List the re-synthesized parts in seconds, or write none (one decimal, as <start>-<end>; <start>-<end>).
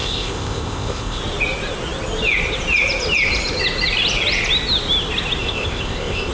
0.0-1.2; 5.4-6.3